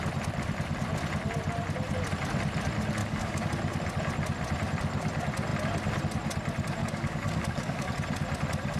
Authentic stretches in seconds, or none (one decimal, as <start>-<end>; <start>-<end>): 0.0-3.0; 3.5-6.8; 7.9-8.8